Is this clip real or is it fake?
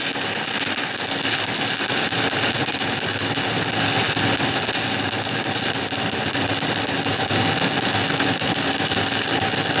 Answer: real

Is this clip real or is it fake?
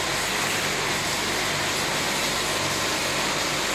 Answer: real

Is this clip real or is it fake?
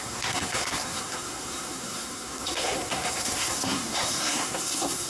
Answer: fake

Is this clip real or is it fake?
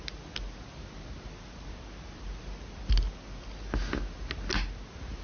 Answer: real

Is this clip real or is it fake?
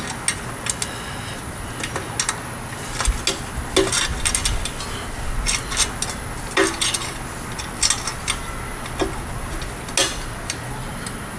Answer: real